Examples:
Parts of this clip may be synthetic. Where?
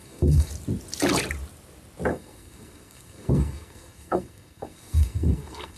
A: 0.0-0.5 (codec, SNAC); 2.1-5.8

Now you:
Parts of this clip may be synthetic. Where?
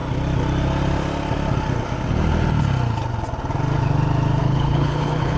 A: 4.4-5.4 (codec, HILCodec)